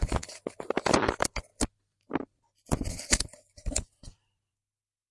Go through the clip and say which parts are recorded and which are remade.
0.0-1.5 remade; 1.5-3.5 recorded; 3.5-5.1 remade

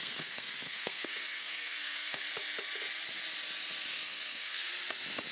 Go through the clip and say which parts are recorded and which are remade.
0.0-2.2 remade; 2.2-3.9 recorded; 3.9-4.7 remade; 4.7-5.3 recorded

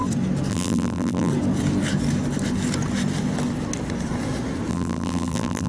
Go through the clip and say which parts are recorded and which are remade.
0.0-0.5 recorded; 0.5-1.3 remade; 1.3-4.7 recorded; 4.7-5.7 remade

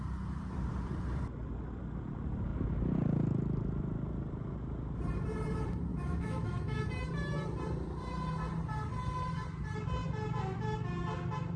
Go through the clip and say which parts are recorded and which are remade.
0.0-5.9 recorded; 5.9-6.9 remade; 6.9-11.6 recorded

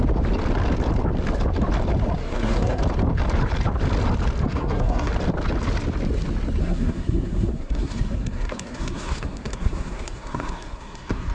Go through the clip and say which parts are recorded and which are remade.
0.0-2.2 recorded; 2.2-2.8 remade; 2.8-4.5 recorded; 4.5-5.1 remade; 5.1-6.6 recorded; 6.6-11.3 remade

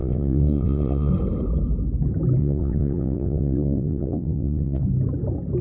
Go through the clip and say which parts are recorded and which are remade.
0.0-1.1 remade; 1.1-2.4 recorded; 2.4-4.8 remade; 4.8-5.6 recorded